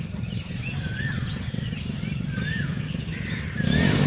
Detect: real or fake real